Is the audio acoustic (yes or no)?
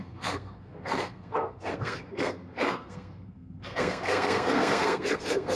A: no